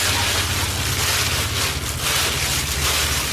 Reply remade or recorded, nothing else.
recorded